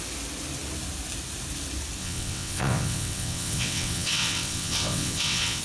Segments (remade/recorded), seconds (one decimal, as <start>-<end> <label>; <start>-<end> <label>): 0.0-2.0 recorded; 2.0-5.6 remade